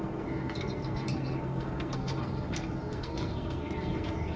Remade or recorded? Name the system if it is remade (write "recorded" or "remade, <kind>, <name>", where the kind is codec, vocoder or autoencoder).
remade, codec, SNAC